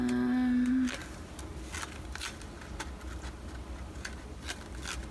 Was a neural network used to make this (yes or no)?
no